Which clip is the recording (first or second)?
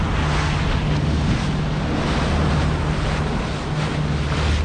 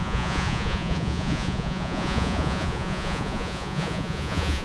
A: first